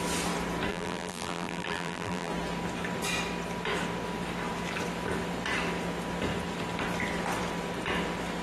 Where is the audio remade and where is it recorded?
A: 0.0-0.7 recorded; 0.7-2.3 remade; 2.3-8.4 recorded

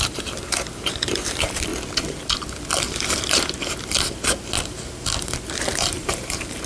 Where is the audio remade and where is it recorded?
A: 0.0-1.7 remade; 1.7-2.8 recorded; 2.8-3.6 remade; 3.6-5.5 recorded; 5.5-6.7 remade